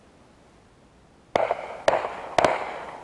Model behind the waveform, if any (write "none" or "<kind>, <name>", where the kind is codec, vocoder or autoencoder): none